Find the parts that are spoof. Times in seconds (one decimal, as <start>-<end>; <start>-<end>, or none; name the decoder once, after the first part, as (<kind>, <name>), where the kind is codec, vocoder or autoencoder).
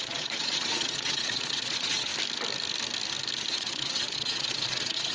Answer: 0.0-2.1 (vocoder, Vocos); 3.5-5.1